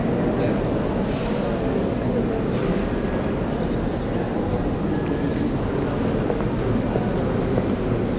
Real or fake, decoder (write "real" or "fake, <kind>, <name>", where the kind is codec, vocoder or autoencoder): real